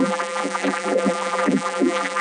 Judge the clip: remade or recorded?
remade